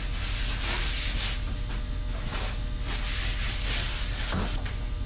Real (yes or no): yes